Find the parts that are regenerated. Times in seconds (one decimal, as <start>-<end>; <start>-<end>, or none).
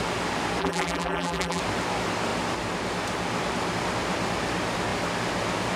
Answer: 0.6-1.6